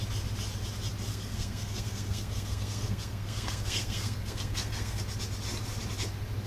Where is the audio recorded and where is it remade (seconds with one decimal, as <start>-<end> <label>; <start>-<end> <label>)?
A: 0.0-1.1 recorded; 1.1-5.0 remade; 5.0-6.5 recorded